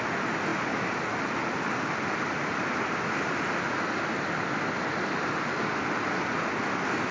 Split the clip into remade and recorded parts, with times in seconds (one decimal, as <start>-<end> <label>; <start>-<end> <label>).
0.0-7.1 recorded